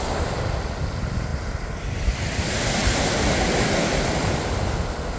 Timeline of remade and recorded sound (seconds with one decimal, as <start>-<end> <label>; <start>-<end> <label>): 0.0-5.2 recorded